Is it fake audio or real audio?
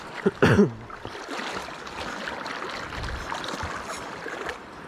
real